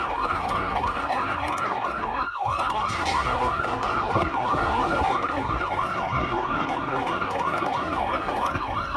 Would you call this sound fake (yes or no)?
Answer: yes